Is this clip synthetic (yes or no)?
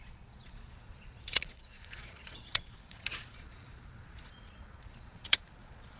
yes